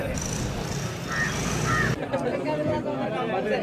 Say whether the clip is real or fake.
real